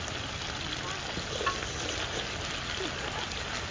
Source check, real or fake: real